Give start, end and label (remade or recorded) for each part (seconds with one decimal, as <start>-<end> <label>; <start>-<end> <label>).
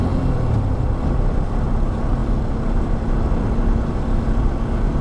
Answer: 0.0-5.0 recorded